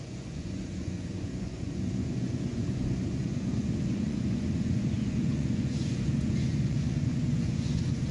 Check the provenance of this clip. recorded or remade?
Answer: remade